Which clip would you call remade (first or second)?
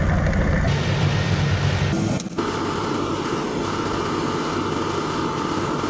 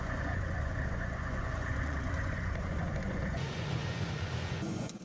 second